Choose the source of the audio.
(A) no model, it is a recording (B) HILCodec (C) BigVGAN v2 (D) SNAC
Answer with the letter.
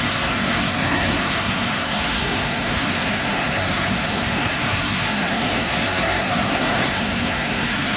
D